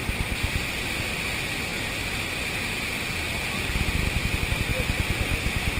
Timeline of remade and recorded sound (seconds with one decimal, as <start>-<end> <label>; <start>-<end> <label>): 0.0-1.1 remade; 1.1-5.8 recorded